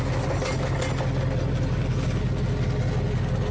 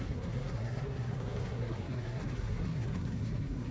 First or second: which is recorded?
first